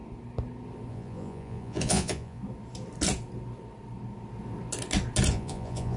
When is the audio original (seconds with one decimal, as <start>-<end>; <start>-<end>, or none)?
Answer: 0.0-0.9; 2.4-5.3